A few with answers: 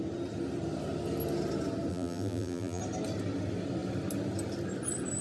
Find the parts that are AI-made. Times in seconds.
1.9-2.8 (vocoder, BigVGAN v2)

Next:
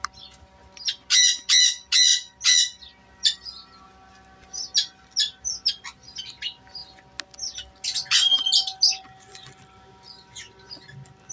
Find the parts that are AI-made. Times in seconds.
none

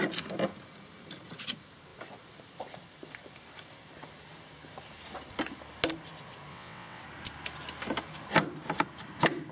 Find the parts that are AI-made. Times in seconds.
6.5-7.0 (vocoder, WaveNeXt)